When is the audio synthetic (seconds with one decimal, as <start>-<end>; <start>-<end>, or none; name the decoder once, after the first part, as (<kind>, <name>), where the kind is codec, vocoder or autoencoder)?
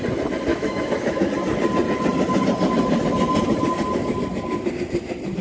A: 0.5-1.3 (autoencoder, DAC-VAE)